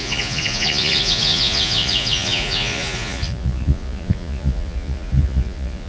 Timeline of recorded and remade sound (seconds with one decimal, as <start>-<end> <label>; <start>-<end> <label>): 0.0-5.9 remade